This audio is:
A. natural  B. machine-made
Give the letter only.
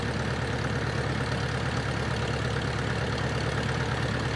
A